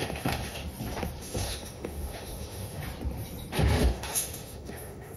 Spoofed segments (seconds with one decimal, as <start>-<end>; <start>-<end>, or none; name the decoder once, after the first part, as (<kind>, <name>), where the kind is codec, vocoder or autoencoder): 0.0-0.6 (autoencoder, DAC-VAE); 1.2-2.8; 3.6-5.2